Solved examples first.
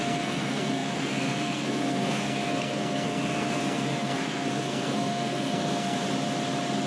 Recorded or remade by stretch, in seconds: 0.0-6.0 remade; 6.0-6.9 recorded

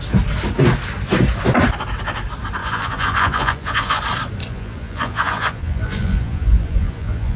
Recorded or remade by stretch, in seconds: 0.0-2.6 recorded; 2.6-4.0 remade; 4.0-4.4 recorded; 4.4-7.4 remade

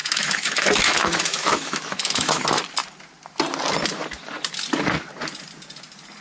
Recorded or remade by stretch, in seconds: 0.0-2.4 remade; 2.4-6.2 recorded

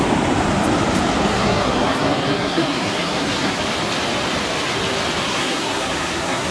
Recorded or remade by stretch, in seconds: 0.0-1.3 recorded; 1.3-3.6 remade; 3.6-5.2 recorded; 5.2-6.5 remade

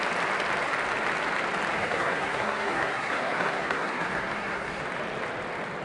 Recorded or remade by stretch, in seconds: 0.0-1.7 recorded; 1.7-4.8 remade; 4.8-5.8 recorded

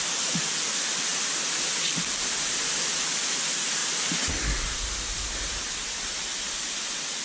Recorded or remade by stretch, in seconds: 0.0-7.2 recorded